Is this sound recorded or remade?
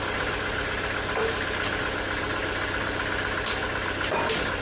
recorded